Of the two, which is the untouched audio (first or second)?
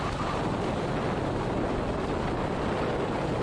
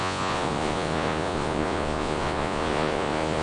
first